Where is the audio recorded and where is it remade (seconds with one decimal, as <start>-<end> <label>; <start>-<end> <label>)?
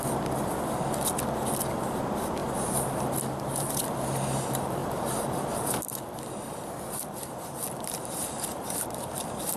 0.0-9.6 remade